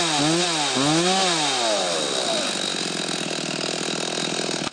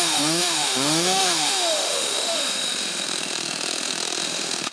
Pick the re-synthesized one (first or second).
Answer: second